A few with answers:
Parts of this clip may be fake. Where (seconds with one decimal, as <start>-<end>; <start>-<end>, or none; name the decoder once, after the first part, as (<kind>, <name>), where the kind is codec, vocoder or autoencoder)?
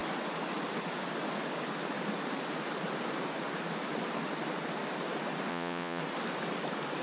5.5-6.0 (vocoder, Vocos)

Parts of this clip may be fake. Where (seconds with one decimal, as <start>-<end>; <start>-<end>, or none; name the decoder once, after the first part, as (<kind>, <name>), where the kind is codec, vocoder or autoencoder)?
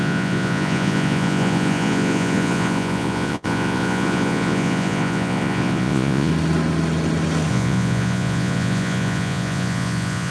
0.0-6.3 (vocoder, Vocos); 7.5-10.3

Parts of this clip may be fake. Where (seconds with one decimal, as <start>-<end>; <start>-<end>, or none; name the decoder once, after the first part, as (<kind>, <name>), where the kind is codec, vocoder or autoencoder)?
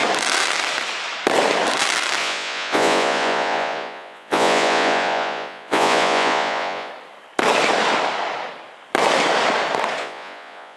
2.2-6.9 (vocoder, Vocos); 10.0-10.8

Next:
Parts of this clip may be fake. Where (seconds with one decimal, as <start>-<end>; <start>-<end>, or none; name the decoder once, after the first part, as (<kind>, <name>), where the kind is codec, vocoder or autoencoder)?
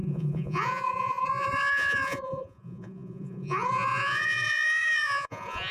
0.0-5.7 (vocoder, Vocos)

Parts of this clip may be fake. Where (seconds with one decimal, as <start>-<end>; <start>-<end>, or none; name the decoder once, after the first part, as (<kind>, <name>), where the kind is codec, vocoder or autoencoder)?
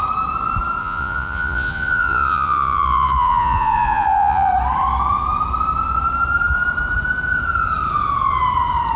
0.8-4.5 (vocoder, Vocos)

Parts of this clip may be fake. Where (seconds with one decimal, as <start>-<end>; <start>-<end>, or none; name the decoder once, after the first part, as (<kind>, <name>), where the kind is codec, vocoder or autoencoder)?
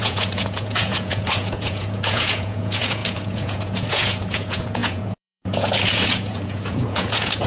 0.0-7.5 (vocoder, Vocos)